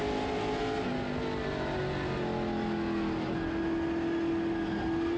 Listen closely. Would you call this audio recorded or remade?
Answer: recorded